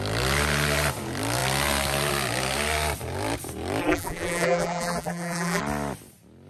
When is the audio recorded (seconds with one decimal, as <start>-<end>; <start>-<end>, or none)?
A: 0.0-3.8; 5.6-6.5